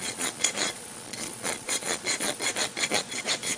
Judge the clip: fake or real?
fake